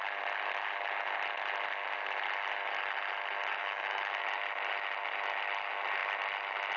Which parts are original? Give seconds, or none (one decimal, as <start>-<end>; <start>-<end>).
0.0-3.6; 4.2-6.8